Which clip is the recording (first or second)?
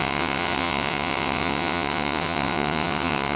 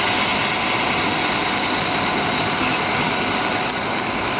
second